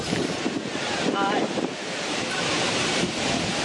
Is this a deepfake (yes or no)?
yes